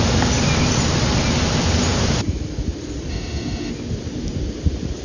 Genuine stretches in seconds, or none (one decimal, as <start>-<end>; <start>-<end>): 0.0-3.1; 3.7-5.0